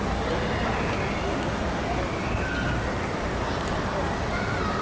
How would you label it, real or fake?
real